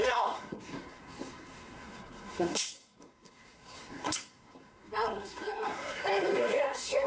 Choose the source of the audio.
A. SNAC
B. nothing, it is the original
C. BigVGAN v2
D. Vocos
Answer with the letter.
A